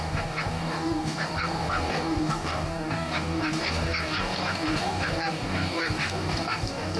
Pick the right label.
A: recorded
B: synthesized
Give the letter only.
B